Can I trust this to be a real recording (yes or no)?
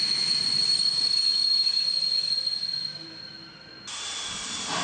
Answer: no